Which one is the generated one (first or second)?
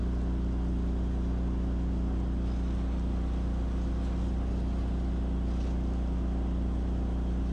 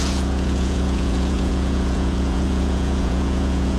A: second